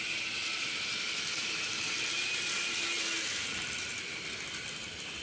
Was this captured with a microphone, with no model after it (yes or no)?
no